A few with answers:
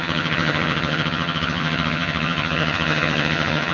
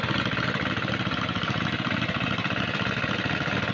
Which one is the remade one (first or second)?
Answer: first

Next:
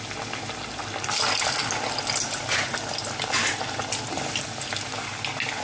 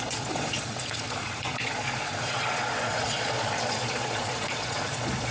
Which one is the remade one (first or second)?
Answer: second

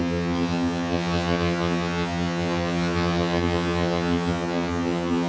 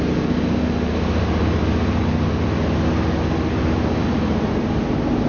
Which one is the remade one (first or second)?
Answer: first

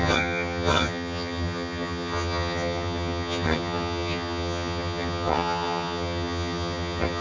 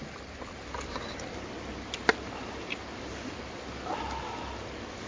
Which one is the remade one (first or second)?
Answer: first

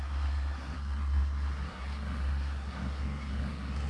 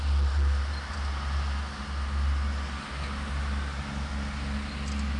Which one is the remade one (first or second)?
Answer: first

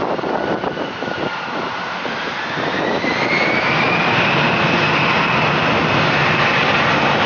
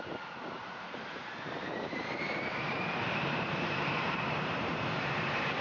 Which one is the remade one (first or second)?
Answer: second